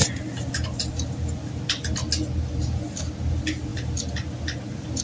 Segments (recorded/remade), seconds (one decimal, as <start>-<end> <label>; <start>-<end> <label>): 0.0-5.0 recorded